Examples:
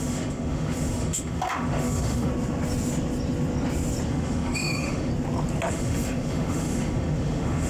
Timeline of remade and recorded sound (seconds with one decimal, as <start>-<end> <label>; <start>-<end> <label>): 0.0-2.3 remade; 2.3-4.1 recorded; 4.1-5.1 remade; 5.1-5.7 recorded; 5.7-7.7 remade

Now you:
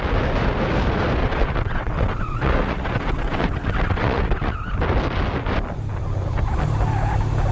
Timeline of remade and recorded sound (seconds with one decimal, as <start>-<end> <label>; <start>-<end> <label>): 0.0-1.2 recorded; 1.2-4.7 remade; 4.7-7.5 recorded

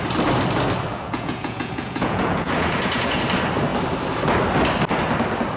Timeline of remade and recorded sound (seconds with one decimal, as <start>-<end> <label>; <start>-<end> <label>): 0.0-0.9 recorded; 0.9-3.2 remade; 3.2-5.6 recorded